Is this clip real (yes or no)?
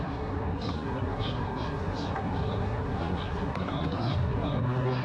no